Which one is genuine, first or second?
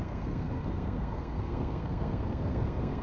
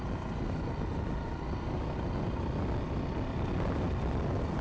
second